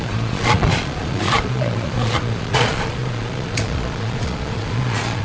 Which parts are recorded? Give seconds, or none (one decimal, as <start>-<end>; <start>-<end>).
none